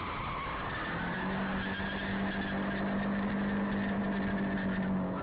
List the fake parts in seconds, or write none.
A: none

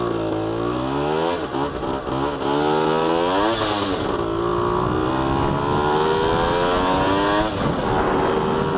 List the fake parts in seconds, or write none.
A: none

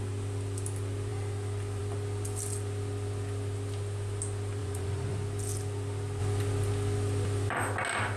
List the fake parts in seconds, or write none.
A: 4.6-5.2 (vocoder, Vocos)

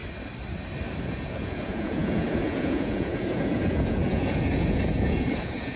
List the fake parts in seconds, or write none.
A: 1.0-5.8 (vocoder, Vocos)

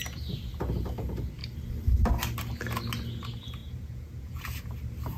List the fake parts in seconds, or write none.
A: 3.6-4.4 (vocoder, Vocos)

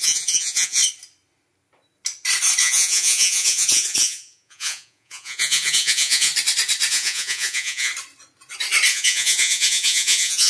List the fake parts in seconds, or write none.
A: 0.0-0.8 (vocoder, Vocos); 2.6-6.3; 6.9-7.9; 8.9-10.5